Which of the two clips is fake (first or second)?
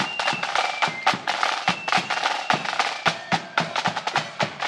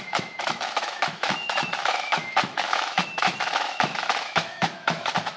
second